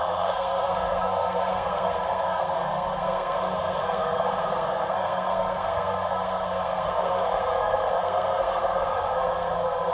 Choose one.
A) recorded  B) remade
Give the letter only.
B